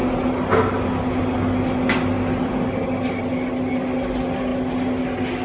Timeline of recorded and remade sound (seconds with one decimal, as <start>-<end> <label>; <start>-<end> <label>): 0.0-5.4 recorded